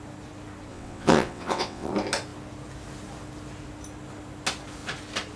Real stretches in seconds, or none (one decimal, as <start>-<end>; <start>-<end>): 0.0-0.7; 1.9-5.4